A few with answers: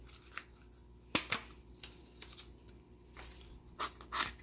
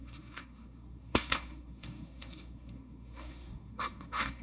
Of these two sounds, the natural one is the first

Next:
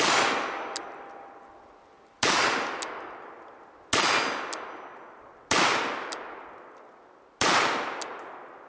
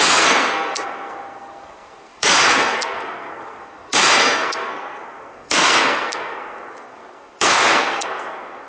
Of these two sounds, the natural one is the first